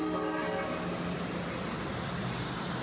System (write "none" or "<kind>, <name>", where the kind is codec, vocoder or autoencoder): none